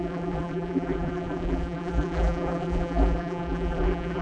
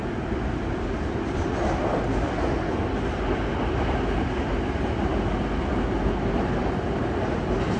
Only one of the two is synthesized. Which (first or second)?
first